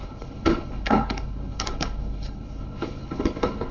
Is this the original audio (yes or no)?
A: no